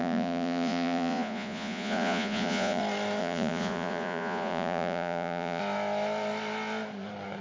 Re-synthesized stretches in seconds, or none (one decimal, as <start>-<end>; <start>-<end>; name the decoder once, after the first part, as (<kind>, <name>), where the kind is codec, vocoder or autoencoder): 0.0-2.8 (vocoder, Vocos); 3.2-5.6